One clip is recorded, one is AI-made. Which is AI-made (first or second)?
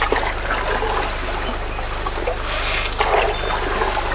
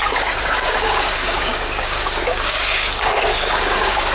second